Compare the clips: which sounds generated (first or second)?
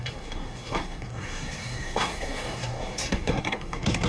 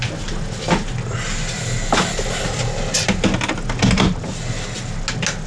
first